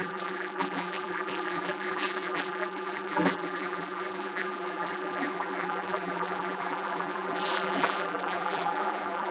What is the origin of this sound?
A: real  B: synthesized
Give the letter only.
B